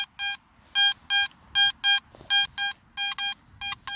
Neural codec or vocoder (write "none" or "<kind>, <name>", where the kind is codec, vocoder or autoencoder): none